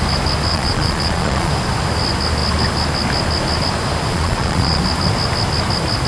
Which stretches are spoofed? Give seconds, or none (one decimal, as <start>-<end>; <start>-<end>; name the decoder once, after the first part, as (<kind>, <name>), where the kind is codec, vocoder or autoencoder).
0.5-1.5 (vocoder, Vocos); 4.1-4.8